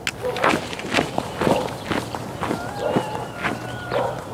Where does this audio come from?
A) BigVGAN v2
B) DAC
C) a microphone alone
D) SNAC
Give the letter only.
C